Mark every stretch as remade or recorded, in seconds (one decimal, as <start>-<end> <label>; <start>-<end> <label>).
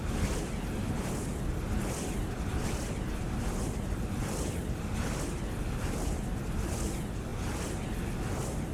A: 0.0-8.7 recorded